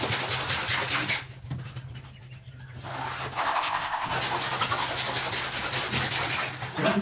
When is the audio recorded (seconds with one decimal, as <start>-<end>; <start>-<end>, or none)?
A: 0.0-3.4; 4.1-7.0